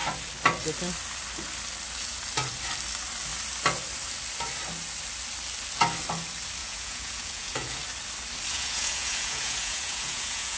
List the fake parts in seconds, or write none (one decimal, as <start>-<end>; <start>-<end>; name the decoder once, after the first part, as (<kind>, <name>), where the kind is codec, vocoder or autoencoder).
6.6-7.8 (vocoder, Vocos); 8.5-10.6